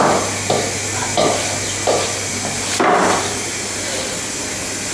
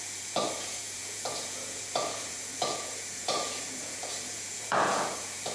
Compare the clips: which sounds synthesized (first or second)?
second